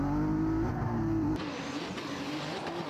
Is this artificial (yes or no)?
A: no